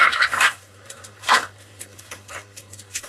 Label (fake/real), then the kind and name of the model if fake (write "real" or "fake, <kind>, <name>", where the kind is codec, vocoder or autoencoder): fake, codec, SNAC